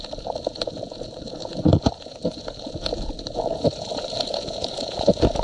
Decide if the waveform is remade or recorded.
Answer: remade